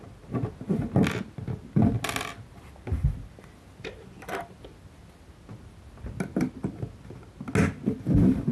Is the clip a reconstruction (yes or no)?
no